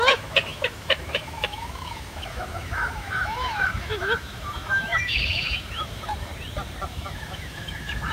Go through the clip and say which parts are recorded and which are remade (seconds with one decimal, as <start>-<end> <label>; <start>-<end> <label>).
0.0-6.3 remade; 6.3-6.9 recorded; 6.9-8.1 remade